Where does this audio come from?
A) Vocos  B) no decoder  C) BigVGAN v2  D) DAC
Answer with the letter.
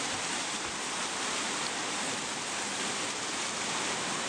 B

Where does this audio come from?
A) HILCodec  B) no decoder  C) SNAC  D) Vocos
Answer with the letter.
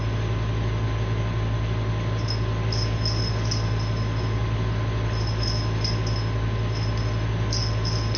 B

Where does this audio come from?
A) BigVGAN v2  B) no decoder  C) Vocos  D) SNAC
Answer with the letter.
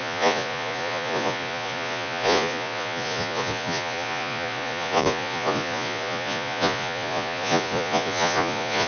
C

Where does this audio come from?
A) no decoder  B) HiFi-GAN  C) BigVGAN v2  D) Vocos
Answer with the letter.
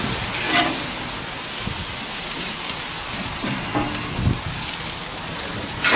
A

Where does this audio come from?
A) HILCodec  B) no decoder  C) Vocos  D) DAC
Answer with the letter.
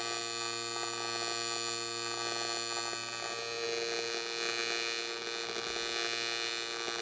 B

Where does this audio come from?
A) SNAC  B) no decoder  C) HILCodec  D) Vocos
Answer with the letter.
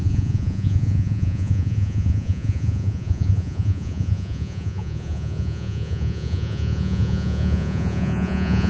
D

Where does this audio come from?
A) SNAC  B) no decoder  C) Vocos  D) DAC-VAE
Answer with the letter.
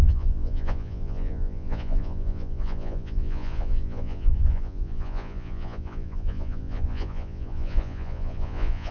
C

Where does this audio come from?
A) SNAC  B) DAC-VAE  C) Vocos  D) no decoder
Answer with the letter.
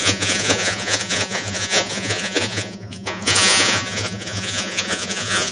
C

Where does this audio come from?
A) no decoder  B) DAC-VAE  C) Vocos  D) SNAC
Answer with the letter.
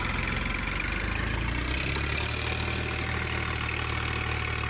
A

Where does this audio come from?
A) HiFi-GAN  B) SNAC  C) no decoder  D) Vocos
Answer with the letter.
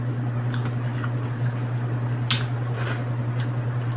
C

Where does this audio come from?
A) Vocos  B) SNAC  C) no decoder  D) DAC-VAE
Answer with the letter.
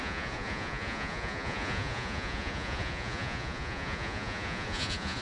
A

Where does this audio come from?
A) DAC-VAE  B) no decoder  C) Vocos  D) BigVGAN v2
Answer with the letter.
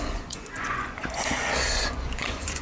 C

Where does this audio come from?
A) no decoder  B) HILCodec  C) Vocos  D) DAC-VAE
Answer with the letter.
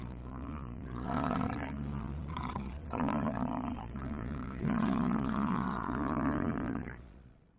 C